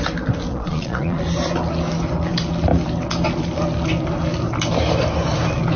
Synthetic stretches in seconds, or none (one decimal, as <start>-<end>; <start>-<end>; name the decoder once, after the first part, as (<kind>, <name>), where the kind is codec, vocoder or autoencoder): 0.5-1.2 (vocoder, Vocos)